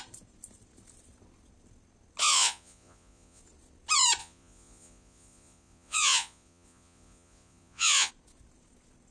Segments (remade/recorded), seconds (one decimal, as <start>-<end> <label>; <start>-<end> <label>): 0.0-2.2 recorded; 2.2-3.4 remade; 3.4-4.2 recorded; 4.2-8.1 remade; 8.1-9.1 recorded